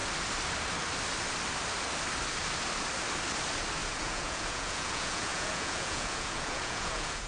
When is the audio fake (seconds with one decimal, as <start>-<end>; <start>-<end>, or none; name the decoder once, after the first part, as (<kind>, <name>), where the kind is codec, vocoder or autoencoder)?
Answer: 3.8-7.3 (vocoder, Vocos)

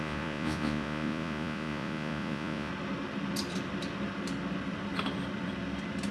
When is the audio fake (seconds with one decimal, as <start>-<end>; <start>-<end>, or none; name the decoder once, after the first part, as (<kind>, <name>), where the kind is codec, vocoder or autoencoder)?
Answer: 0.0-2.7 (vocoder, Vocos)

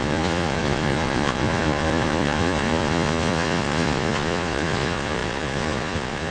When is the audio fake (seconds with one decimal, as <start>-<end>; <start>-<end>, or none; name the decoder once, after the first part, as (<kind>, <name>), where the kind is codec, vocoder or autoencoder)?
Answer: 0.0-6.3 (vocoder, Vocos)

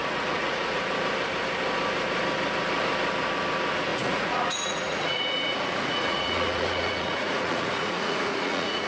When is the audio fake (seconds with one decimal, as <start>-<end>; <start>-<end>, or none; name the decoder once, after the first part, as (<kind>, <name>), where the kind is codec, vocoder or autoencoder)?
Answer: 0.0-0.8 (vocoder, Vocos); 3.9-8.9